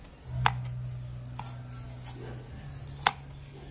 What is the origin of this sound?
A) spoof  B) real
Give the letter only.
B